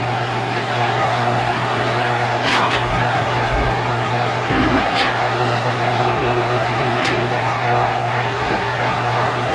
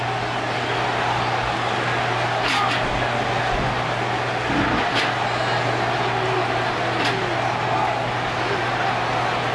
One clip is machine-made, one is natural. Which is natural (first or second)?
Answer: second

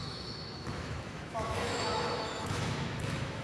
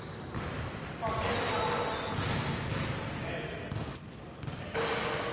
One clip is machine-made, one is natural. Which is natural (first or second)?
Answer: second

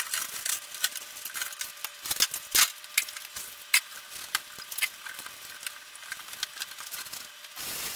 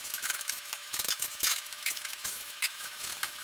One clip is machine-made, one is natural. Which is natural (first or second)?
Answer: first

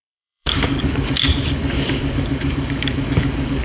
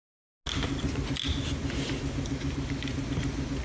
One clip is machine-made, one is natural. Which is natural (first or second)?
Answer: second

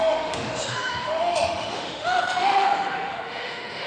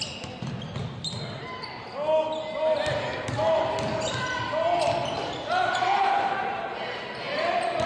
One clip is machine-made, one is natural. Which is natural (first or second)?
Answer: second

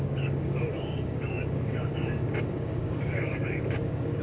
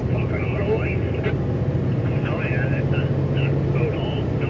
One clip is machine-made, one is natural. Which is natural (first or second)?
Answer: second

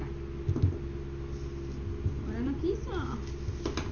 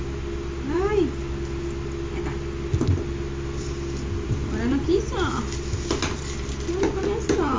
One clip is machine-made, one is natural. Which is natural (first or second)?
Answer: first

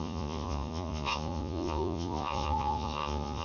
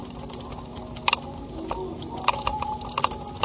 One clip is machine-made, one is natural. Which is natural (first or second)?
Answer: second